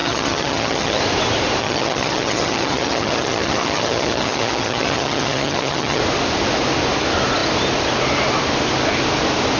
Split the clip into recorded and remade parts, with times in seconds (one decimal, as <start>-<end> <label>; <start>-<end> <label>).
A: 0.0-1.0 remade; 1.0-1.6 recorded; 1.6-6.0 remade; 6.0-9.6 recorded